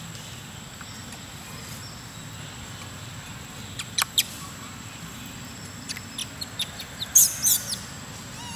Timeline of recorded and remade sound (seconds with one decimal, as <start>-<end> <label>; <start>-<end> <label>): 0.0-8.6 recorded

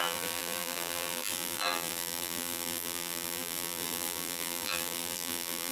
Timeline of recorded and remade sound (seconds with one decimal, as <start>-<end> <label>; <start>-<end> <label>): 0.0-5.7 remade

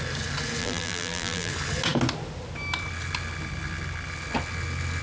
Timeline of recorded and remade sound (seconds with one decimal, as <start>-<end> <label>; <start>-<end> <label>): 0.0-0.6 recorded; 0.6-1.5 remade; 1.5-5.0 recorded

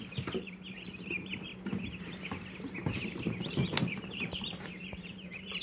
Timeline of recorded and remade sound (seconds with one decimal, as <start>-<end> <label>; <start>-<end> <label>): 0.0-1.5 remade; 1.5-3.4 recorded; 3.4-5.6 remade

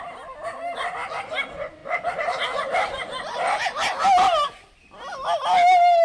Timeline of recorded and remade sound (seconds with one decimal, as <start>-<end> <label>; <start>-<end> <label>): 0.0-6.0 recorded

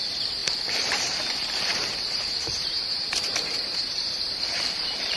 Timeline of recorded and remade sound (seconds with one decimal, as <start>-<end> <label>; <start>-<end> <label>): 0.0-5.2 remade